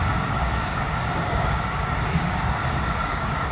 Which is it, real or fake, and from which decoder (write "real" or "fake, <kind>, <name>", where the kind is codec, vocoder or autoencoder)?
fake, codec, DAC